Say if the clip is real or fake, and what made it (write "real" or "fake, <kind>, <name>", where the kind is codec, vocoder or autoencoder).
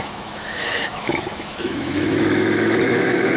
fake, autoencoder, DAC-VAE